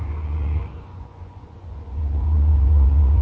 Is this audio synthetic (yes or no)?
yes